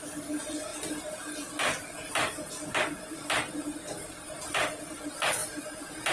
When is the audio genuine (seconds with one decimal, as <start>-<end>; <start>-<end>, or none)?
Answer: 0.0-6.1